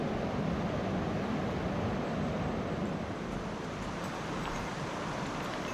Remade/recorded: recorded